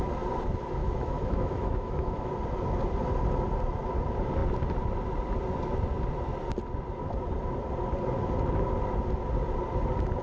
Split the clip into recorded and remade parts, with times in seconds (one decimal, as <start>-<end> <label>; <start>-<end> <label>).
0.0-0.8 recorded; 0.8-2.3 remade; 2.3-10.2 recorded